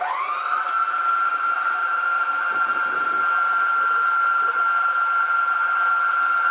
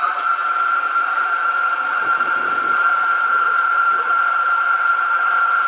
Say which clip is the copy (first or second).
second